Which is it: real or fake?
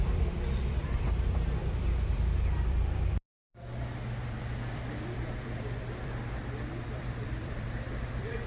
fake